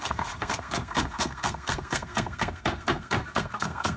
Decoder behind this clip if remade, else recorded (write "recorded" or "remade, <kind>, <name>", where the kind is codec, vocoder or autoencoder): remade, codec, SNAC